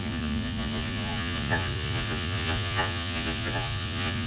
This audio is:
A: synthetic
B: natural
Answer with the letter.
A